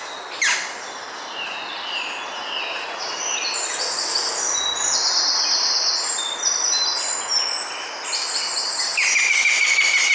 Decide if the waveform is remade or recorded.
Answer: recorded